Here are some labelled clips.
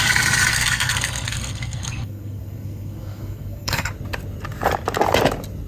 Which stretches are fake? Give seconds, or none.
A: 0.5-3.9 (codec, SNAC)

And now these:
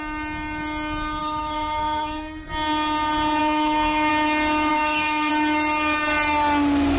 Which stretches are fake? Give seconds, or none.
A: 1.2-2.5 (codec, SNAC); 3.4-4.1; 4.7-5.3